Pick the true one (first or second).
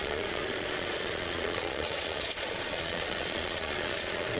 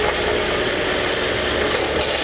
second